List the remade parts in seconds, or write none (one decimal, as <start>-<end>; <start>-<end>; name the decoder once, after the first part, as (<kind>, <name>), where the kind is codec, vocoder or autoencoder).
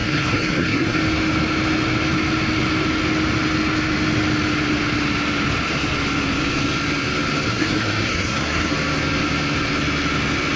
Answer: 0.0-1.0 (codec, SNAC); 7.5-8.7